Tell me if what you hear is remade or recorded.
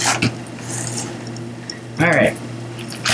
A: recorded